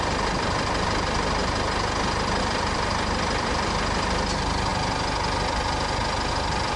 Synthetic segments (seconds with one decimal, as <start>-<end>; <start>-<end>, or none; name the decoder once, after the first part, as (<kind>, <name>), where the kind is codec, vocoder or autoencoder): 0.0-1.4 (vocoder, BigVGAN v2); 2.4-4.7; 6.3-6.8